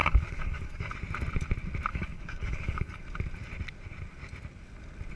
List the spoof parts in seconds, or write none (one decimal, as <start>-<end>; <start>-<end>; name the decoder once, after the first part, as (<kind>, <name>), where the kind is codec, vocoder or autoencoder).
0.0-0.9 (codec, DAC); 1.9-3.0